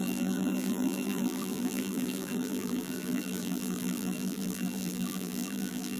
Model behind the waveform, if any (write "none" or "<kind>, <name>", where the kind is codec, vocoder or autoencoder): vocoder, BigVGAN v2